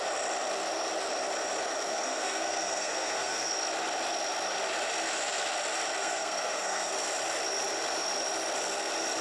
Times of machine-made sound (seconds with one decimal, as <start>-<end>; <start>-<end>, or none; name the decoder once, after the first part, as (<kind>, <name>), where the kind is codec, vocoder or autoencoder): 1.9-3.5 (codec, SNAC); 6.0-6.9